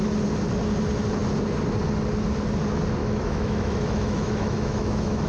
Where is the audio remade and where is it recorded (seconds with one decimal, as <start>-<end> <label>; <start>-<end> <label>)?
0.0-3.0 recorded; 3.0-5.3 remade